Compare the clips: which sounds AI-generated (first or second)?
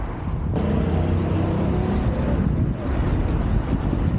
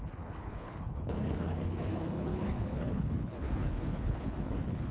second